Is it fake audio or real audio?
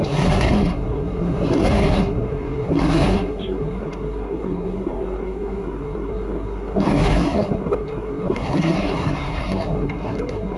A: fake